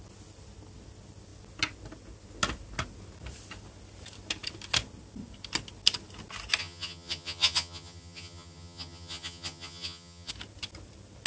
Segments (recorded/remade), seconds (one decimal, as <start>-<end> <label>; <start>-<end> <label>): 0.0-6.6 recorded; 6.6-10.3 remade; 10.3-11.3 recorded